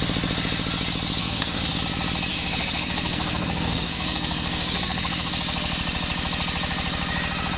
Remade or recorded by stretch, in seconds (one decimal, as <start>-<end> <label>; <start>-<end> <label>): 0.0-1.2 recorded; 1.2-1.7 remade; 1.7-2.3 recorded; 2.3-5.3 remade; 5.3-7.6 recorded